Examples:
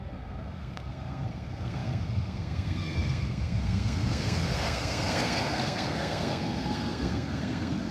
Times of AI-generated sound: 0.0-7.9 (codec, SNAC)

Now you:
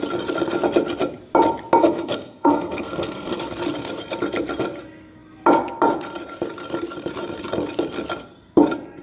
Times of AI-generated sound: 1.8-3.4 (codec, SNAC)

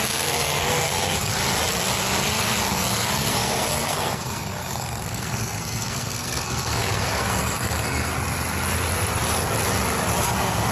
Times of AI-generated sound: 0.0-1.3 (codec, SNAC); 2.7-8.1; 10.2-10.7

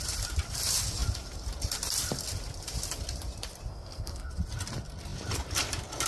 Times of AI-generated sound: 3.7-4.3 (codec, SNAC)

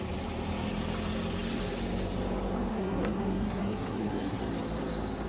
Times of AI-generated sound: 2.7-4.4 (codec, SNAC)

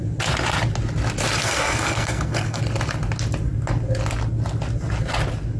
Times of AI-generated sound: 1.4-2.6 (codec, SNAC)

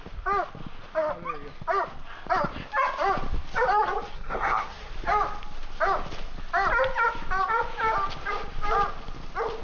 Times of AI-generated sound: 4.1-4.9 (codec, SNAC)

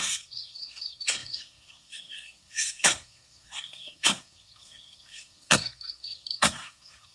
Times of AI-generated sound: 0.0-7.1 (codec, SNAC)